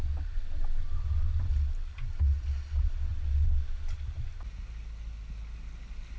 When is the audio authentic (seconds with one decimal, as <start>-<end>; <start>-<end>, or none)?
0.0-6.2